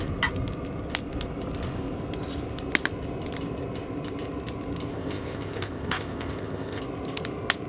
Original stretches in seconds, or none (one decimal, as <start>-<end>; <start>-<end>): 0.0-4.9; 6.8-7.7